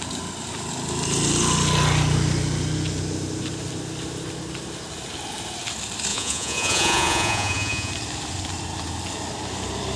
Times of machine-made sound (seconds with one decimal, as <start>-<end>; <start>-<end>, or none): 6.1-7.9